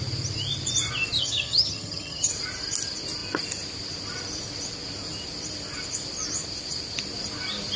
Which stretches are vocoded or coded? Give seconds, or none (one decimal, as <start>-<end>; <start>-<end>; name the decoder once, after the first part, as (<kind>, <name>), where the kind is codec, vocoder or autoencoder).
1.2-2.3 (vocoder, HiFi-GAN)